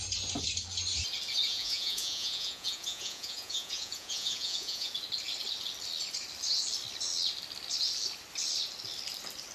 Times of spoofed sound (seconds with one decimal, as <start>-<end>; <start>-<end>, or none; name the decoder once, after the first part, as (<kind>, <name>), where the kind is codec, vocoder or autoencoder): 1.5-4.9 (vocoder, Vocos)